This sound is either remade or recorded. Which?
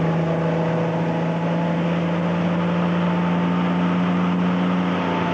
recorded